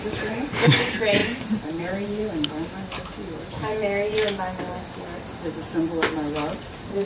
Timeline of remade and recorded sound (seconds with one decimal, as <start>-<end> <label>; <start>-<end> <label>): 0.0-2.2 remade; 2.2-6.5 recorded; 6.5-7.1 remade